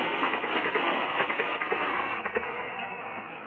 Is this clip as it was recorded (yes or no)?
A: no